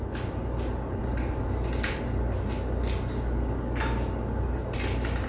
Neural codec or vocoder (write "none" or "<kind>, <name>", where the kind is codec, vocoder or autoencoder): none